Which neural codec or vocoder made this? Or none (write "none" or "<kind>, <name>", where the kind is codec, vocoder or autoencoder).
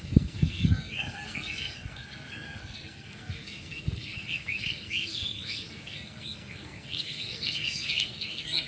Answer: codec, SNAC